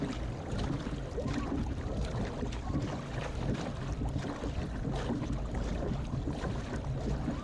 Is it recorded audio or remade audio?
remade